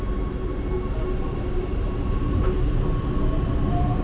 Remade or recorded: recorded